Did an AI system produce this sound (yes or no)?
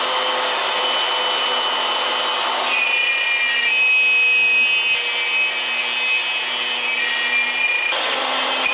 no